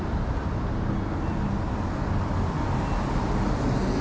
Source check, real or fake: real